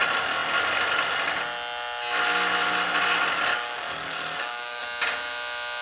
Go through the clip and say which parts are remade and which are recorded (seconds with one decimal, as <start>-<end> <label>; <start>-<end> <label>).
0.0-3.5 recorded; 3.5-4.8 remade; 4.8-5.8 recorded

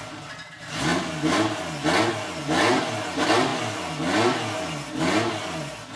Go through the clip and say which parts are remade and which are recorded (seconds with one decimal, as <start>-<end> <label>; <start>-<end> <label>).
0.0-6.0 recorded